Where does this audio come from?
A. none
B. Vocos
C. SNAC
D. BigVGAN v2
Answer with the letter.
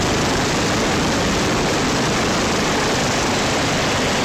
A